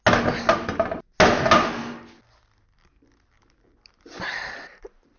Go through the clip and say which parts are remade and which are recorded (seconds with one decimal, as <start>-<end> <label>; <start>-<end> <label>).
0.0-5.2 recorded